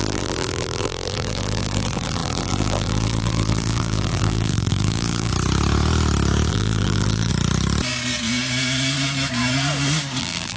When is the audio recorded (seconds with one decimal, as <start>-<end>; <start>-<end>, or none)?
5.3-6.5; 7.3-10.2